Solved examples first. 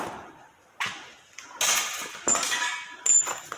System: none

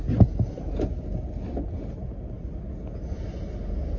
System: none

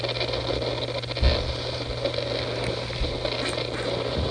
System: none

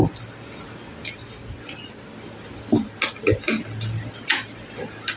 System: none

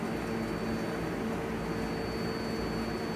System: none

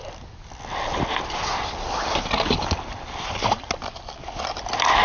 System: none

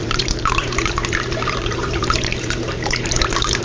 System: vocoder, BigVGAN v2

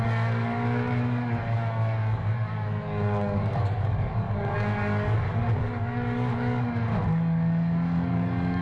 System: codec, DAC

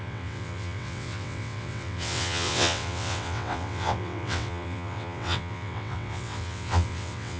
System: vocoder, WaveNeXt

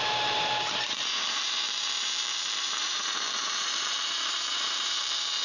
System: vocoder, BigVGAN v2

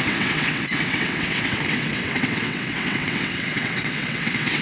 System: vocoder, WaveNeXt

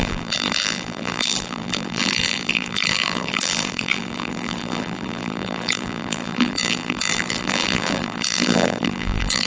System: vocoder, BigVGAN v2